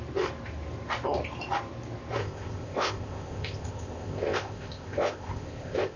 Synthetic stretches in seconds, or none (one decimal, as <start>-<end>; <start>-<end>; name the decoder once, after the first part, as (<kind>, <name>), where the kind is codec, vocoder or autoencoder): 2.2-6.0 (codec, ZipCodec)